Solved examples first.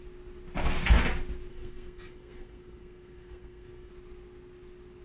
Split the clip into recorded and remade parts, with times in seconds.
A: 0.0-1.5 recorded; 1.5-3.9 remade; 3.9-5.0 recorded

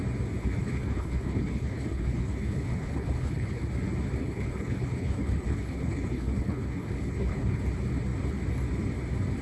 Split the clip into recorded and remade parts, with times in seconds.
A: 0.0-0.4 recorded; 0.4-3.7 remade; 3.7-4.2 recorded; 4.2-7.6 remade; 7.6-9.4 recorded

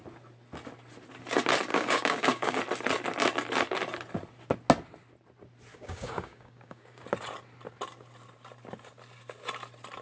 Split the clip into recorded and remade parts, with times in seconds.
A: 0.0-1.7 recorded; 1.7-2.6 remade; 2.6-5.7 recorded; 5.7-7.0 remade; 7.0-10.0 recorded